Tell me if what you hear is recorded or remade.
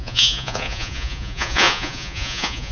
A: remade